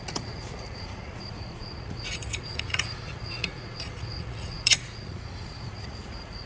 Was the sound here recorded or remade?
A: remade